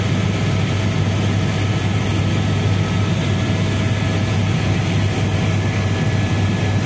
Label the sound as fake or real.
real